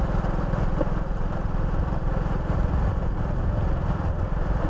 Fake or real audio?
real